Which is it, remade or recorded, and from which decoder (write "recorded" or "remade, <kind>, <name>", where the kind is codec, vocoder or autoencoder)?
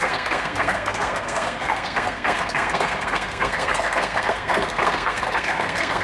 remade, codec, SNAC